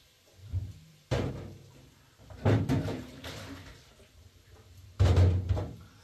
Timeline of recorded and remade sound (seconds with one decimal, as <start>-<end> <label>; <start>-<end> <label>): 0.0-0.4 recorded; 0.4-1.3 remade; 1.3-6.0 recorded

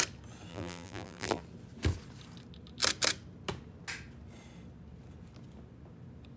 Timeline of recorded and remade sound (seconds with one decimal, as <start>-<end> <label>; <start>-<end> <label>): 0.0-0.5 recorded; 0.5-1.4 remade; 1.4-6.4 recorded

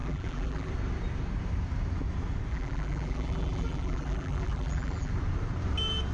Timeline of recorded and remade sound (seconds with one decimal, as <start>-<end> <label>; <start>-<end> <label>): 0.0-0.7 remade; 0.7-2.5 recorded; 2.5-5.1 remade; 5.1-6.1 recorded